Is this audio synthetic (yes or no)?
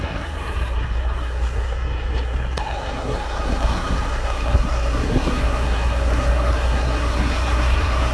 yes